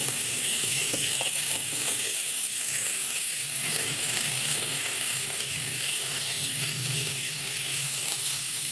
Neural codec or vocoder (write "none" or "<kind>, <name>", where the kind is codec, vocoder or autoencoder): codec, DAC